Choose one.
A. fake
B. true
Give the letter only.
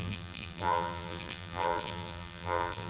A